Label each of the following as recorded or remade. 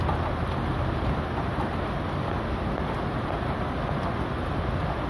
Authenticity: recorded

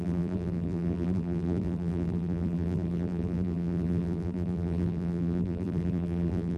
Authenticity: remade